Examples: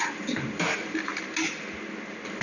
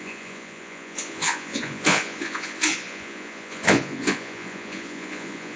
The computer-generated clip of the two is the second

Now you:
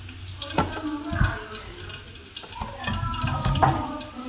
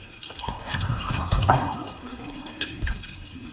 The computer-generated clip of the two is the second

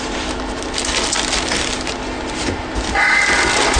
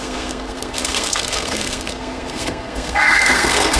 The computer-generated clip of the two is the second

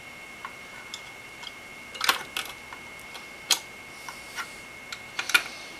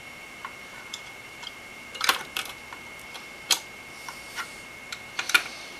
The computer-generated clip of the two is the second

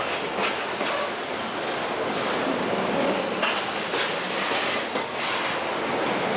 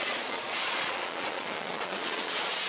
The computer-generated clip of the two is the second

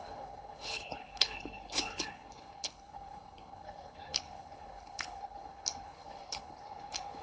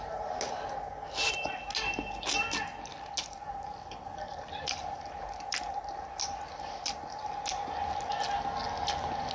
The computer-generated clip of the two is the first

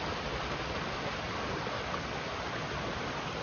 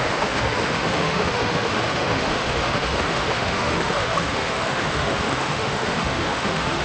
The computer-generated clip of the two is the second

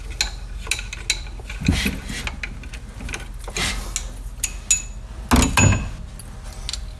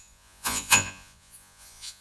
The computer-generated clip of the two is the second